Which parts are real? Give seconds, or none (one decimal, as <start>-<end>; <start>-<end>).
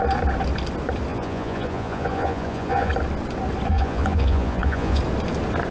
0.0-1.1; 2.9-3.7; 5.0-5.7